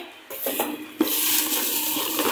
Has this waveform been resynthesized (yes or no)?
no